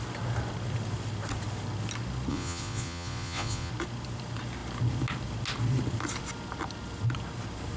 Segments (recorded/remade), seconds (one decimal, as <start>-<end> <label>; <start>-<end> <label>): 0.0-2.3 recorded; 2.3-3.7 remade; 3.7-7.8 recorded